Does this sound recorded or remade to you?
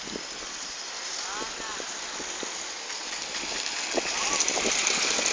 recorded